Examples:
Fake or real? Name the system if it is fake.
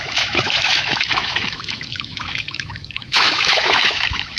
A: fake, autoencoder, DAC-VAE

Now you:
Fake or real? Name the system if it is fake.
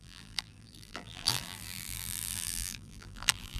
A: fake, vocoder, BigVGAN v2